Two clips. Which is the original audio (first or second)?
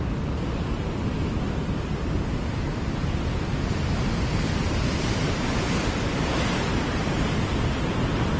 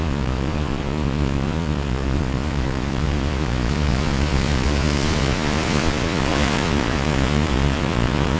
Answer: first